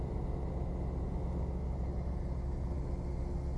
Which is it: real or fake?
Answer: real